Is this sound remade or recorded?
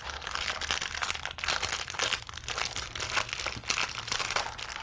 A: recorded